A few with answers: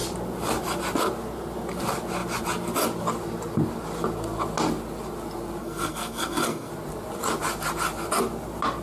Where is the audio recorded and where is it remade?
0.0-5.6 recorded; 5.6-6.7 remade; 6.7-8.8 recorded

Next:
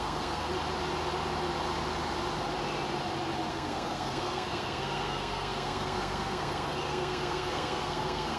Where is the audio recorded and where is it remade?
0.0-0.5 remade; 0.5-3.5 recorded; 3.5-8.4 remade

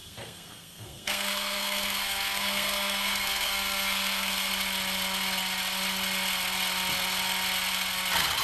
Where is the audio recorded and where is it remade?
0.0-4.5 remade; 4.5-8.4 recorded

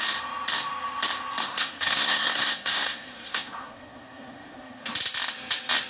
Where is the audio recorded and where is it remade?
0.0-1.4 recorded; 1.4-4.9 remade; 4.9-5.9 recorded

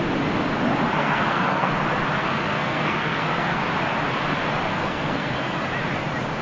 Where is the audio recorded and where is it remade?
0.0-0.9 recorded; 0.9-1.7 remade; 1.7-2.2 recorded; 2.2-3.6 remade; 3.6-4.7 recorded; 4.7-5.6 remade; 5.6-6.4 recorded

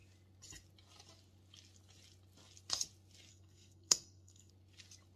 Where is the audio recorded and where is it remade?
0.0-3.3 recorded; 3.3-4.5 remade; 4.5-5.2 recorded